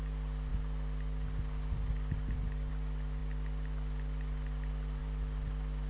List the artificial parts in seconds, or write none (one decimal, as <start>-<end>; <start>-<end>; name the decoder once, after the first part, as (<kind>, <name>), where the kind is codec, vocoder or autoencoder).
none